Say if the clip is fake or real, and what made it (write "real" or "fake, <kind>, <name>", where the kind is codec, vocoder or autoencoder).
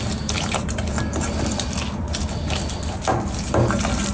real